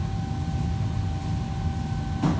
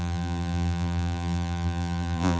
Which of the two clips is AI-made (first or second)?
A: second